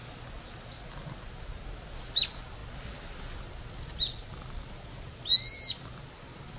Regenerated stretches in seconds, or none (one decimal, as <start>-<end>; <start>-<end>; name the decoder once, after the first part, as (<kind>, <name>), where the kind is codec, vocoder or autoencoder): none